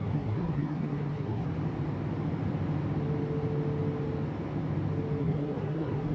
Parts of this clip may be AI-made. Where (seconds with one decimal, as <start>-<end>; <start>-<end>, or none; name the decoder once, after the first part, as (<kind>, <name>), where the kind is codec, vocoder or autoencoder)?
0.0-1.5 (codec, SNAC); 5.2-6.1